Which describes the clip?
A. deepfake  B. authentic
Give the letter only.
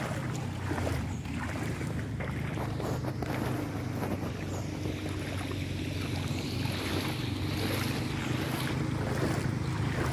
B